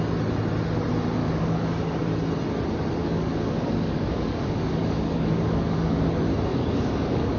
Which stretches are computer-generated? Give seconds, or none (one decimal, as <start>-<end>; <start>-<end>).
1.2-2.1; 3.0-6.0; 6.5-7.4